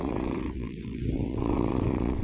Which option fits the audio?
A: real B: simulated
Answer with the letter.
B